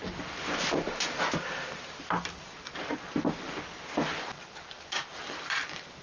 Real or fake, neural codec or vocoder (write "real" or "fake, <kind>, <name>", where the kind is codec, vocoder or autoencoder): real